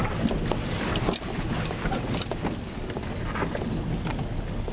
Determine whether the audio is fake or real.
real